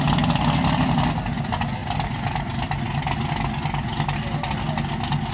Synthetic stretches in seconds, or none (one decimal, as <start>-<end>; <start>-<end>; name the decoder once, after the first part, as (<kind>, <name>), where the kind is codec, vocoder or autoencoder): none